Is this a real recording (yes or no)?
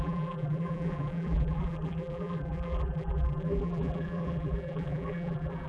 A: no